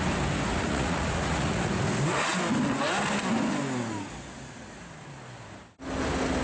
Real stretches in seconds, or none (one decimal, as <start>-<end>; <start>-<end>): 0.0-0.5; 1.7-6.4